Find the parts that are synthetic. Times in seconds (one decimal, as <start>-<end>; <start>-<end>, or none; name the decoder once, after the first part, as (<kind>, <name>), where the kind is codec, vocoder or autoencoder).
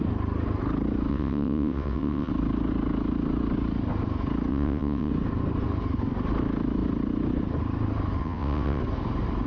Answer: 1.1-2.3 (vocoder, WaveNeXt); 4.5-5.1; 8.2-8.8